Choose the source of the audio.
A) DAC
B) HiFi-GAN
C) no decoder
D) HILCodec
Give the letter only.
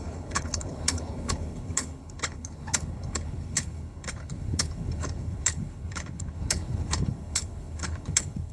D